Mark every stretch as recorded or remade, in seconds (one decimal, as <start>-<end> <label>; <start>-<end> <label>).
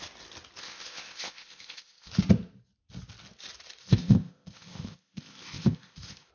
0.0-0.6 recorded; 0.6-2.1 remade; 2.1-3.8 recorded; 3.8-6.3 remade